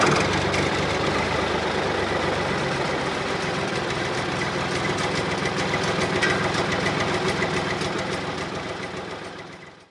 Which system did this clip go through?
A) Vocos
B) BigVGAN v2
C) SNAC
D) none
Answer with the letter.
D